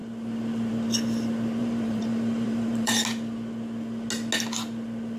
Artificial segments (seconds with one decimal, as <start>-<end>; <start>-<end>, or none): 1.6-2.9